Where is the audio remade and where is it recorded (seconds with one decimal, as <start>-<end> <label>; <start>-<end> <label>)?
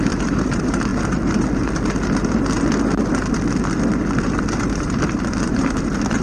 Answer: 0.0-0.9 remade; 0.9-4.6 recorded; 4.6-6.2 remade